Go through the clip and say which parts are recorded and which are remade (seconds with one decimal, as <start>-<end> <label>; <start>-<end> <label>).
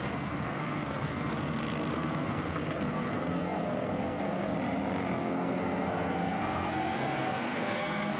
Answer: 0.0-1.3 remade; 1.3-1.9 recorded; 1.9-4.5 remade; 4.5-5.2 recorded; 5.2-8.2 remade